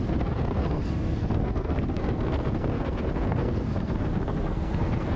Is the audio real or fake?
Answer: fake